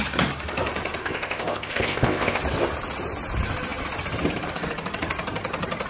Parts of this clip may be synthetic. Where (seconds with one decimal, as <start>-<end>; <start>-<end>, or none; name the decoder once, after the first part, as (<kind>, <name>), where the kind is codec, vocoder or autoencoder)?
1.0-2.4 (codec, ZipCodec)